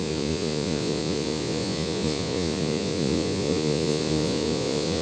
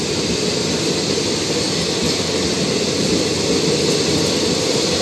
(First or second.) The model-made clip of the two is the first